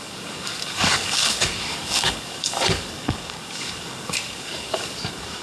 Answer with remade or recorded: remade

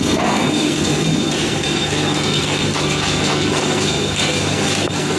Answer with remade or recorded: remade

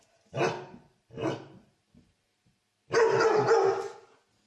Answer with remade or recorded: recorded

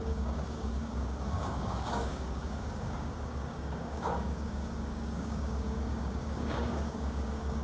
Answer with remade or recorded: remade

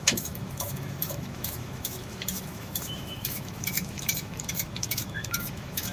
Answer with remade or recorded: remade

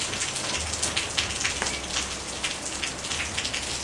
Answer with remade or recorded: recorded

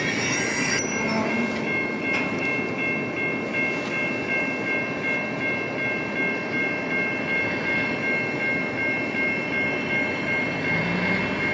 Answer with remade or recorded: recorded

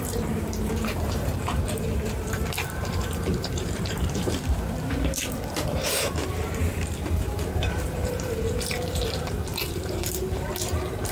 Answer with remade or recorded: remade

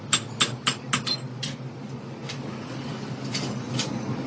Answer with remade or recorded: recorded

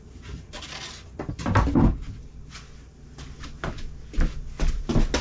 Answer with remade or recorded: recorded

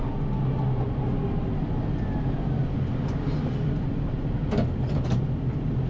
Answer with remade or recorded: recorded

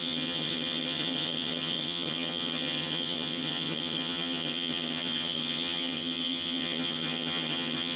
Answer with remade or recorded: remade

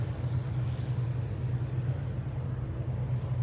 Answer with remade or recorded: recorded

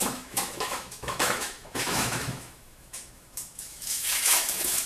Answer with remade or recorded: remade